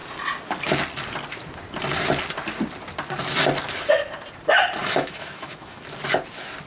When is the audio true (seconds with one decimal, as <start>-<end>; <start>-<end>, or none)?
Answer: 0.0-4.8; 5.8-6.7